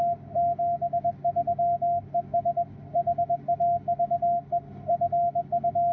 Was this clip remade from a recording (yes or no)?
no